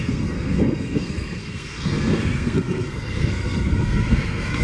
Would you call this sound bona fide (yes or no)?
no